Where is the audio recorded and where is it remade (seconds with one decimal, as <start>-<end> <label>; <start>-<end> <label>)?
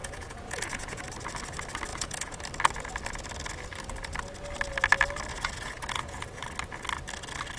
0.0-1.0 remade; 1.0-1.9 recorded; 1.9-2.4 remade; 2.4-5.3 recorded; 5.3-6.4 remade; 6.4-7.6 recorded